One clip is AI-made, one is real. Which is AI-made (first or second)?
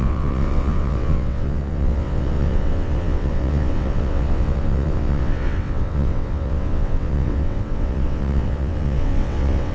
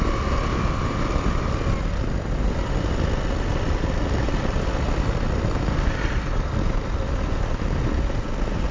first